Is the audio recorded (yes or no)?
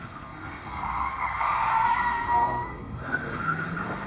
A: no